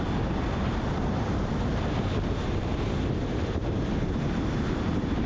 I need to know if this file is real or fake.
fake